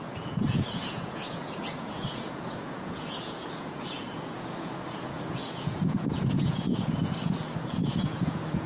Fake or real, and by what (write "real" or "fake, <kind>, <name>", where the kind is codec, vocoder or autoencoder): fake, vocoder, Vocos